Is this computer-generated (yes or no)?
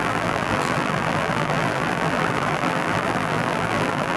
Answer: yes